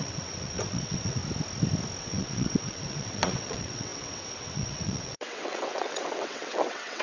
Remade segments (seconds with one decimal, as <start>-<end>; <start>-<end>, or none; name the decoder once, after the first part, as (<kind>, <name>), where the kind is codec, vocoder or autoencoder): 0.0-1.2 (vocoder, WaveNeXt); 2.0-7.0